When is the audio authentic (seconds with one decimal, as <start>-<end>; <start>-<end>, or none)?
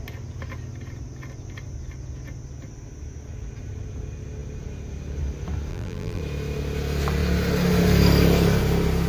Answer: 0.0-5.7; 6.2-9.1